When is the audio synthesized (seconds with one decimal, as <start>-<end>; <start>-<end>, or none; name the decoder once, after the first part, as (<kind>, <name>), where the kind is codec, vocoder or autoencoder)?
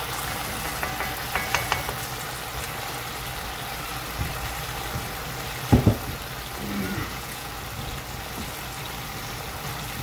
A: 7.0-7.5 (vocoder, Vocos)